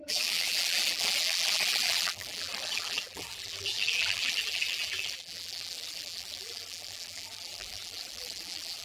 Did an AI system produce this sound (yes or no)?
yes